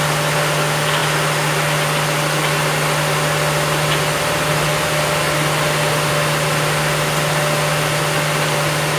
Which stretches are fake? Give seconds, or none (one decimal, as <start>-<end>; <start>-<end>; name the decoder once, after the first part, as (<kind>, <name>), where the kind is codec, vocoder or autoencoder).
none